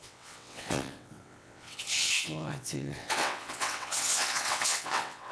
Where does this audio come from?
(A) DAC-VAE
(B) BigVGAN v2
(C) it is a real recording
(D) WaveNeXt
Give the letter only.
D